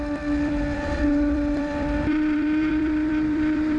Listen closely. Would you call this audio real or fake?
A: fake